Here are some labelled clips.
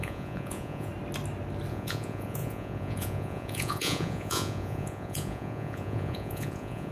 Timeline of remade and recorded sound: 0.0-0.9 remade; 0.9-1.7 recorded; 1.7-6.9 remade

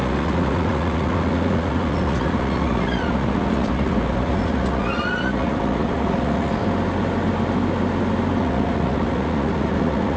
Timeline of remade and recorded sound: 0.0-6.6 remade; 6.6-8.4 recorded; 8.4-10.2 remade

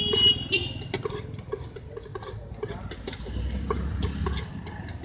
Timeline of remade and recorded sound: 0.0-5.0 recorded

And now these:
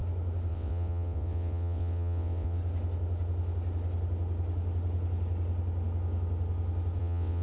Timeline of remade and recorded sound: 0.0-0.5 recorded; 0.5-2.6 remade; 2.6-7.0 recorded; 7.0-7.4 remade